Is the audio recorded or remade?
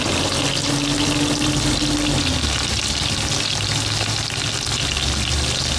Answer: recorded